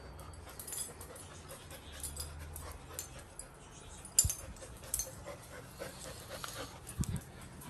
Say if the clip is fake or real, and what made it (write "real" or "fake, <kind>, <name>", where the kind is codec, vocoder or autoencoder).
real